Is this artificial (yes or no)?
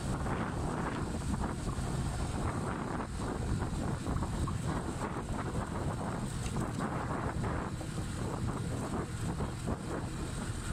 yes